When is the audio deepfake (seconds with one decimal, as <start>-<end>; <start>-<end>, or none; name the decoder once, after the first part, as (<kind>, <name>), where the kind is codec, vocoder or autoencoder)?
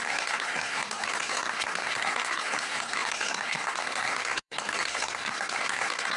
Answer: 0.0-6.2 (codec, SNAC)